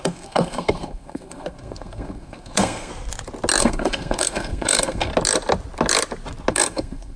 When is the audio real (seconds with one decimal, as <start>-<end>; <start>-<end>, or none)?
2.9-3.6; 5.1-6.5